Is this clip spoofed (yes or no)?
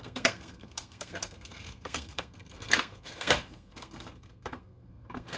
yes